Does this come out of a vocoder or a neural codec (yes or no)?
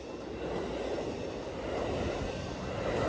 no